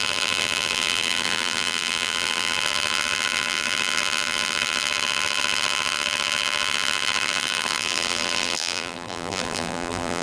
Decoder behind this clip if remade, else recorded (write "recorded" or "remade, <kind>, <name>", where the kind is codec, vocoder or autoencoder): remade, vocoder, BigVGAN v2